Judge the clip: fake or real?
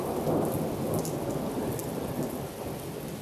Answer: real